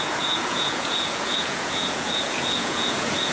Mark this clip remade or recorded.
remade